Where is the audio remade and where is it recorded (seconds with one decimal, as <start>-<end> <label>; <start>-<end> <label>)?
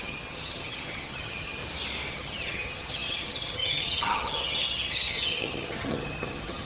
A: 0.0-1.6 remade; 1.6-2.1 recorded; 2.1-6.6 remade